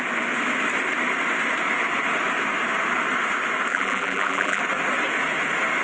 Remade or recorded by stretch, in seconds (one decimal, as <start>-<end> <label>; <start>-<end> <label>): 0.0-3.7 recorded; 3.7-4.6 remade; 4.6-5.8 recorded